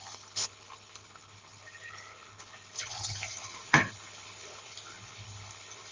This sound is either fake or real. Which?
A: fake